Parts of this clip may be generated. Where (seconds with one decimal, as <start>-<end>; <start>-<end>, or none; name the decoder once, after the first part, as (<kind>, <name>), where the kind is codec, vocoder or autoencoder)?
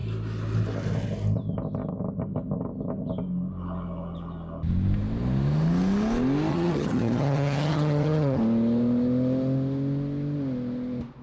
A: 6.5-8.4 (vocoder, HiFi-GAN)